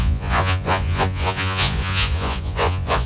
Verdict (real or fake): fake